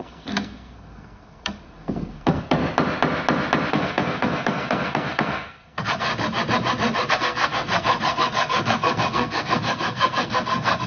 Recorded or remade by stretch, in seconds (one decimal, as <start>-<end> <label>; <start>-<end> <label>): 0.0-2.6 remade; 2.6-3.7 recorded; 3.7-6.1 remade; 6.1-7.1 recorded; 7.1-10.9 remade